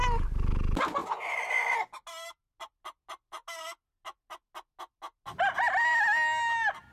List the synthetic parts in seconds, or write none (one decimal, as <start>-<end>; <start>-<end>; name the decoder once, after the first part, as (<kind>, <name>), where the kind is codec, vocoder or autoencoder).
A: none